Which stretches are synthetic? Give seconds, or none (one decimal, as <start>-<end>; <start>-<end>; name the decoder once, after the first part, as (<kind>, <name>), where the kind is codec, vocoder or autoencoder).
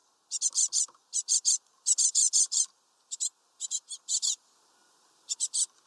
1.0-5.9 (vocoder, BigVGAN v2)